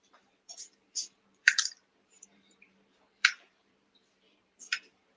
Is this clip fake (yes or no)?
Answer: yes